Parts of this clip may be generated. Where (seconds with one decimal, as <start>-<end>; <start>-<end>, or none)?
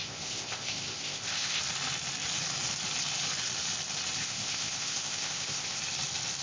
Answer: 0.0-1.6; 4.2-5.8